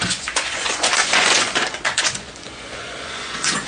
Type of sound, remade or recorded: remade